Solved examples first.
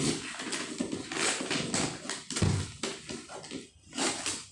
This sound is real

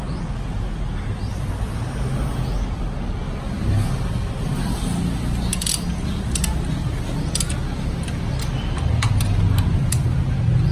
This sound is real